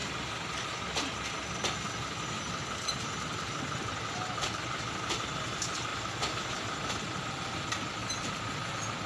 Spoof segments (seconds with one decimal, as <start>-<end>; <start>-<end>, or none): none

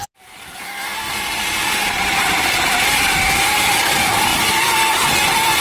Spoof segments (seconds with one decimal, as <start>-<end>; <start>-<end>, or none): 1.8-3.8; 4.3-5.1

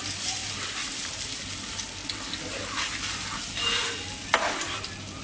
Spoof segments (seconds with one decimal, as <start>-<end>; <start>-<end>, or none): 0.4-1.1

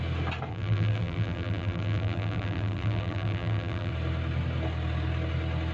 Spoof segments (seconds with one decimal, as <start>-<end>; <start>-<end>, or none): 0.5-3.9

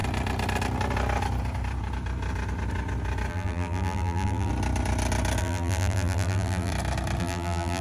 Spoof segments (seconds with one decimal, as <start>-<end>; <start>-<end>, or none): 3.3-4.5; 5.4-6.7; 7.2-7.8